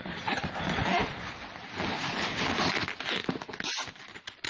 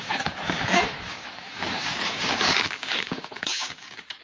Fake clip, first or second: second